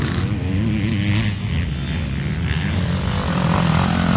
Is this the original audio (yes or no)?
yes